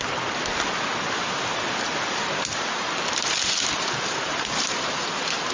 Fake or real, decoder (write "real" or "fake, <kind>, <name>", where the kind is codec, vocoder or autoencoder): real